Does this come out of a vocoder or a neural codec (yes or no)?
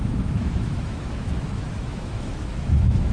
yes